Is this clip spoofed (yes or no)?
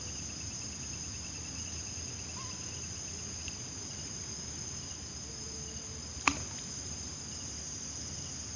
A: no